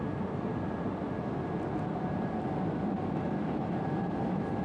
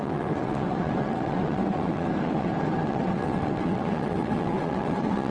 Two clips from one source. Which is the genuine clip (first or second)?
first